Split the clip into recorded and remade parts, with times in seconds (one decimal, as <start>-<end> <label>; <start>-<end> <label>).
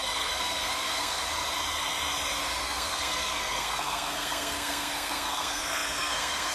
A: 0.0-1.2 remade; 1.2-2.6 recorded; 2.6-6.5 remade